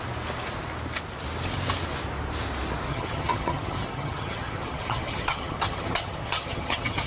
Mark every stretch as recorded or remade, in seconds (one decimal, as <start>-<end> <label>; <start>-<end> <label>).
0.0-2.9 recorded; 2.9-7.1 remade